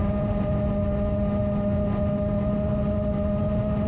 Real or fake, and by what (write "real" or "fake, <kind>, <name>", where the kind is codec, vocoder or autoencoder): real